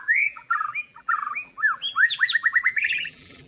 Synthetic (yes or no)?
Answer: yes